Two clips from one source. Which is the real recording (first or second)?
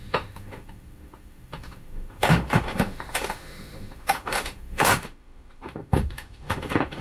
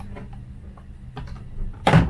second